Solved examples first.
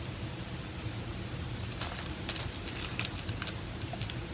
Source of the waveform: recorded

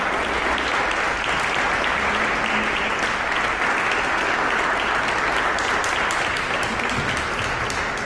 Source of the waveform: recorded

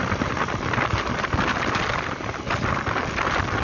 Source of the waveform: recorded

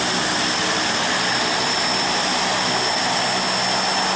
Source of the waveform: recorded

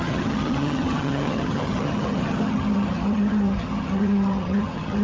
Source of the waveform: remade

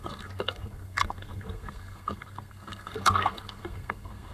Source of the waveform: remade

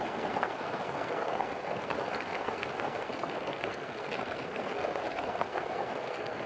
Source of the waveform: remade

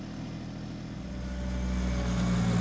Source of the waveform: recorded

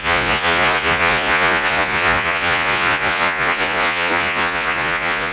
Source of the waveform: remade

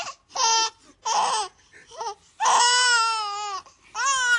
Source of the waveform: recorded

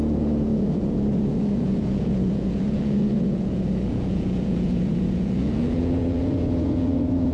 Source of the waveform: remade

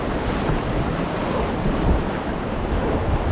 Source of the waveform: remade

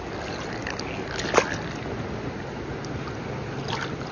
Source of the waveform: recorded